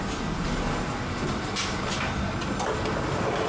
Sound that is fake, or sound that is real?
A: real